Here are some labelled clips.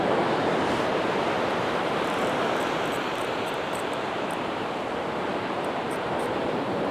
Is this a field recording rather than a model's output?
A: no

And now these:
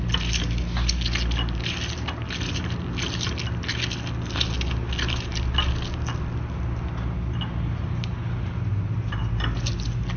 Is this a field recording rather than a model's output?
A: yes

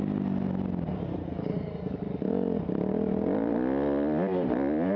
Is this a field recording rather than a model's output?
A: yes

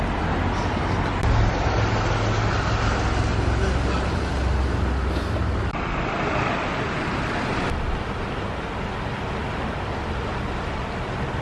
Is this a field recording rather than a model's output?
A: yes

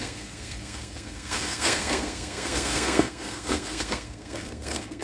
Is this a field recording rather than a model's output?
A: no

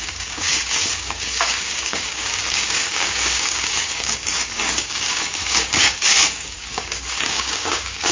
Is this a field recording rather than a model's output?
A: no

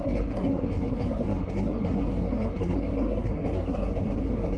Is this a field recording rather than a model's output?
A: no